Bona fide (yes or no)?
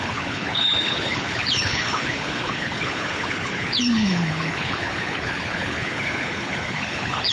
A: no